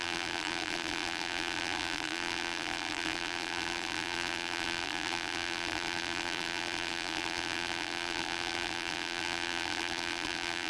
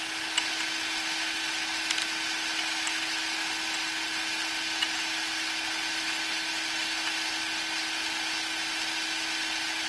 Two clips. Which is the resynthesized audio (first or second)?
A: first